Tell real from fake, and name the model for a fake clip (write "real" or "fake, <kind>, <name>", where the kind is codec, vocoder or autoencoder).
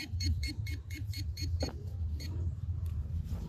fake, vocoder, BigVGAN v2